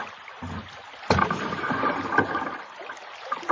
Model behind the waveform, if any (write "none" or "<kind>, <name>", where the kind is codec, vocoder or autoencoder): none